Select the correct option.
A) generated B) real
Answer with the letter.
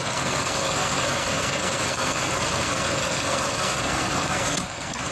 A